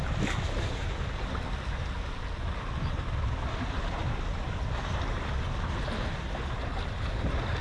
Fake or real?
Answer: real